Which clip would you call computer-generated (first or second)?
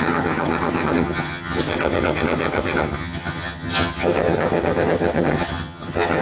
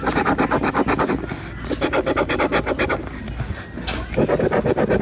first